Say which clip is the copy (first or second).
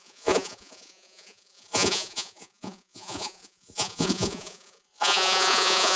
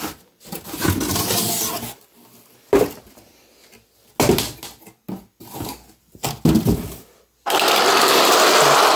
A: first